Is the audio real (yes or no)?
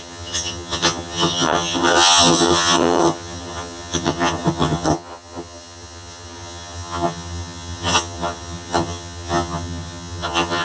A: no